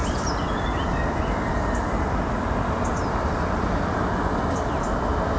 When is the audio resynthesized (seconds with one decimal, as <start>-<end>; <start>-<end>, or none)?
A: none